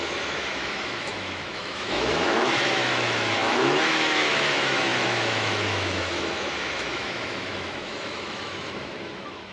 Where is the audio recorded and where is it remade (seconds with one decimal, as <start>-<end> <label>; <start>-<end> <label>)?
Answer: 0.0-9.5 remade